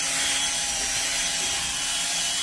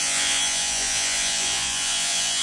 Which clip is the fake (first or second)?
second